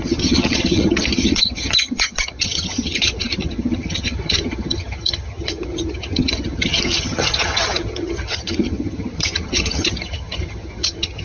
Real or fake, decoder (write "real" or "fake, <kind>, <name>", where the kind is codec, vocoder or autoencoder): fake, vocoder, HiFi-GAN